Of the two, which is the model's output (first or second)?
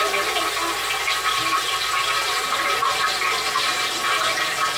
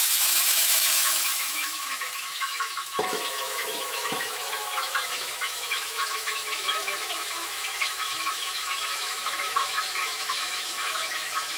second